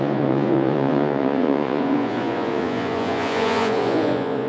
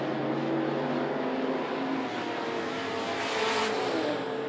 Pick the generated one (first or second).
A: first